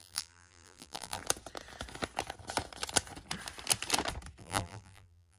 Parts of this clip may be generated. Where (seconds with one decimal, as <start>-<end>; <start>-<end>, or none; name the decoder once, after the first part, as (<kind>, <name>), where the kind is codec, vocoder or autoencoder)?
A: 0.0-1.2 (vocoder, BigVGAN v2); 4.4-5.4